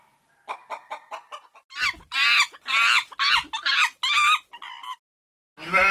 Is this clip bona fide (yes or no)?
yes